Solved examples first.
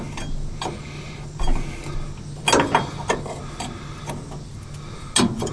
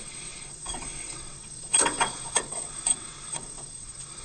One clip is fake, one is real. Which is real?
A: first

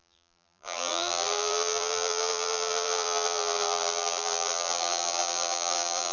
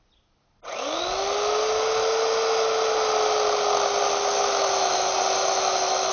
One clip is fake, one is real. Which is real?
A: second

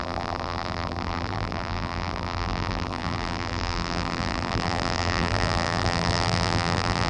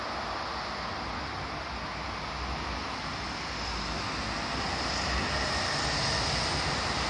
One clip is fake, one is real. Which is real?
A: second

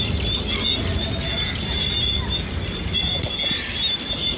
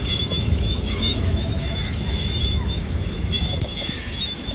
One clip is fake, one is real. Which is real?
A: first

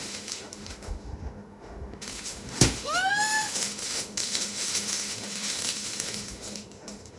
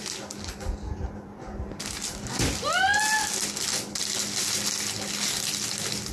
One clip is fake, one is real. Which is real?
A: second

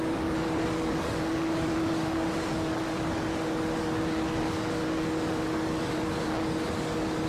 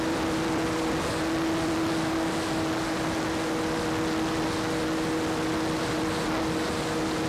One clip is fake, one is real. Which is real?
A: second